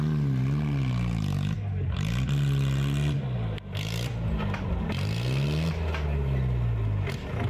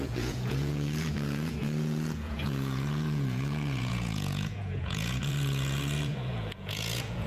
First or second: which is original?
first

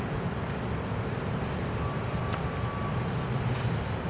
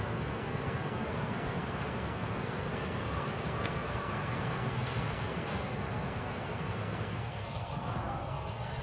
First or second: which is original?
first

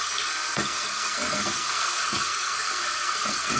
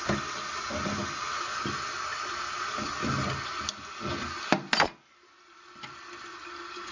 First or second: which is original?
second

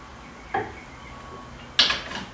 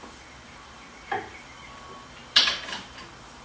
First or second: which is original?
first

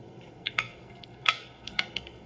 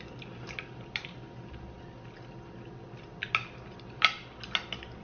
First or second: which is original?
second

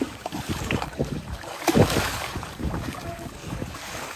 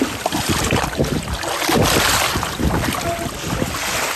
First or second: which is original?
second